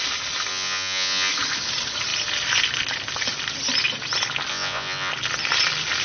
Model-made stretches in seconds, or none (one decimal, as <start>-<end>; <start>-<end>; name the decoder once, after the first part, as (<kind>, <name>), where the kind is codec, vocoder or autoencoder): 0.5-1.3 (vocoder, Vocos); 4.5-5.1